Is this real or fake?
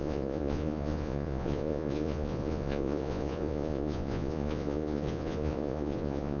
fake